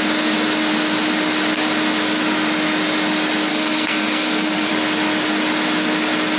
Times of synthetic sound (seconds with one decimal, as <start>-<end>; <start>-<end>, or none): 3.5-4.7

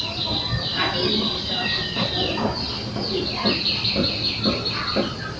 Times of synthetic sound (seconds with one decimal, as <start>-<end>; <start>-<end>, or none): none

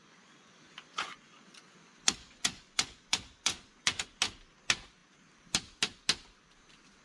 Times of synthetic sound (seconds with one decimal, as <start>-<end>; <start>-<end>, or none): 0.0-4.2

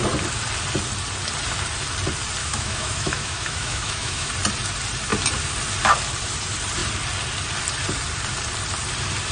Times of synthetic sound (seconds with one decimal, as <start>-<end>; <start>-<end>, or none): 2.4-4.3

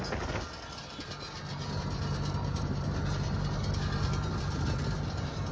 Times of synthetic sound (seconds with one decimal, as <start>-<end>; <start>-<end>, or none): 2.4-4.4

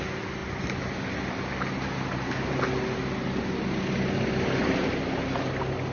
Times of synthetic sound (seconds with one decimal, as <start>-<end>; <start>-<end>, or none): none